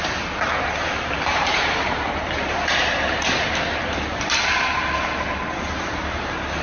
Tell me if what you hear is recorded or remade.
remade